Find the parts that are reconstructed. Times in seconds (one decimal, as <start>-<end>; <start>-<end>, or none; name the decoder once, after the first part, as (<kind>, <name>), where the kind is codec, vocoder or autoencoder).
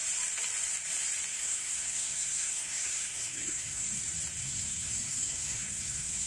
1.3-4.0 (codec, SNAC); 4.4-6.3